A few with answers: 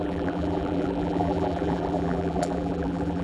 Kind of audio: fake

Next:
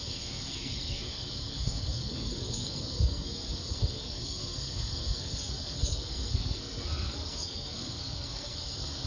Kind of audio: fake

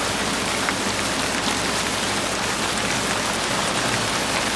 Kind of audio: fake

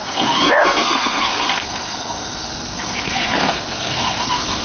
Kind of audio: fake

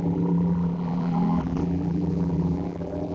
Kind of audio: fake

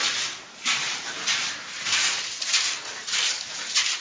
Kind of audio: fake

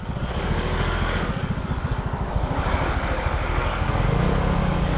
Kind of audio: fake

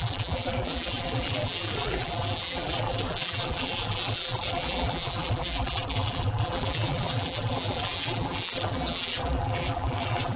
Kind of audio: fake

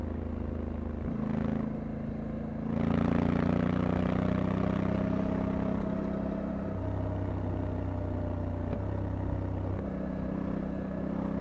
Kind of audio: real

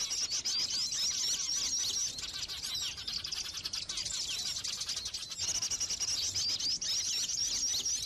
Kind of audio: real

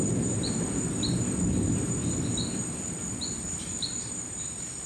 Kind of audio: fake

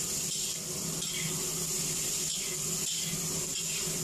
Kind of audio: real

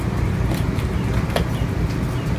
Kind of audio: real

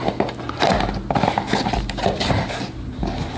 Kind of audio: real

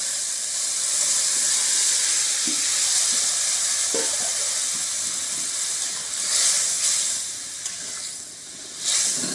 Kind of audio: real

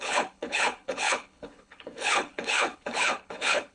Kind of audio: fake